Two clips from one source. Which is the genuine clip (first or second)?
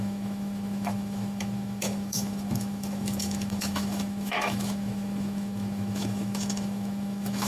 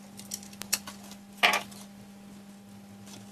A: second